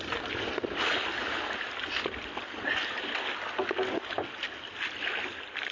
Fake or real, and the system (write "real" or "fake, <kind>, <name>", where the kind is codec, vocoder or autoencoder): real